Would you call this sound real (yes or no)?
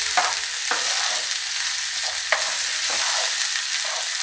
yes